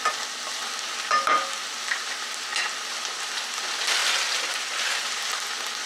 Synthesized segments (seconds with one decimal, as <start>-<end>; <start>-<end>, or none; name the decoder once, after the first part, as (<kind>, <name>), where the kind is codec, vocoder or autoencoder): none